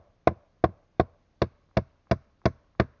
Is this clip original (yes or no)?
yes